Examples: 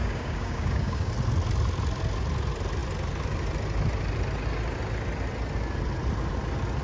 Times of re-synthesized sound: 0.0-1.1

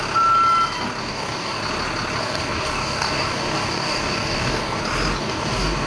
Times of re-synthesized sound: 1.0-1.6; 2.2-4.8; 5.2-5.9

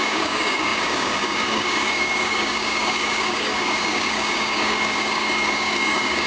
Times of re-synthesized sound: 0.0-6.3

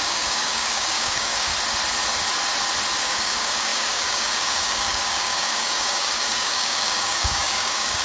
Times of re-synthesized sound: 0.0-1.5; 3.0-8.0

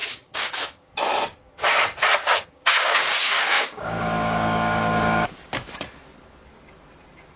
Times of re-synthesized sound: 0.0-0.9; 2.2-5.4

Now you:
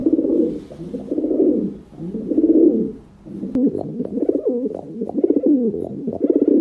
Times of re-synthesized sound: none